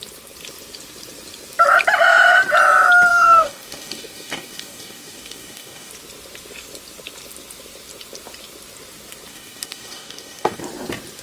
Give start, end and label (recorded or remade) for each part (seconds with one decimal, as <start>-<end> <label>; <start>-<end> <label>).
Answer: 0.0-3.1 recorded; 3.1-5.9 remade; 5.9-9.3 recorded; 9.3-10.6 remade; 10.6-11.2 recorded